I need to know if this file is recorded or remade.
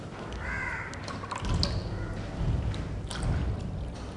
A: recorded